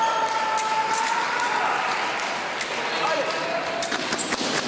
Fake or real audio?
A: real